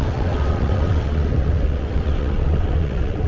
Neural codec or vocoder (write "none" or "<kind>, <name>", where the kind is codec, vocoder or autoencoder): vocoder, WaveNeXt